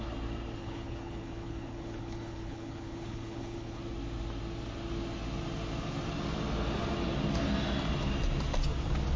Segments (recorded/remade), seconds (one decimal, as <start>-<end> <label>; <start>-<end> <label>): 0.0-0.6 recorded; 0.6-3.8 remade; 3.8-9.2 recorded